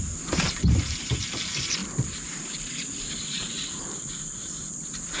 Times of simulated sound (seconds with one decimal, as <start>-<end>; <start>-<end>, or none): 1.8-5.2